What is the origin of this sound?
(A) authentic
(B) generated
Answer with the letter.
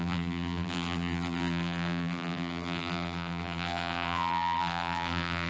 B